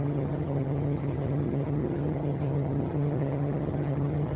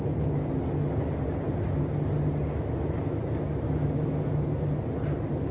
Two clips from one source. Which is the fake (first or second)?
first